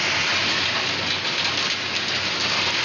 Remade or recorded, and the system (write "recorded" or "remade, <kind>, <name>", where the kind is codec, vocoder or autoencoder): recorded